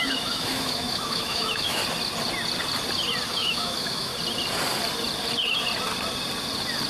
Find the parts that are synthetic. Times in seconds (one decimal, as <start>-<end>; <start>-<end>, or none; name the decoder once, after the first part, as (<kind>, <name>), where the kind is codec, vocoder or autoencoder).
0.0-1.8 (autoencoder, DAC-VAE); 3.3-4.1